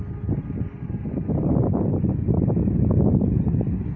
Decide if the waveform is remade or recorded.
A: recorded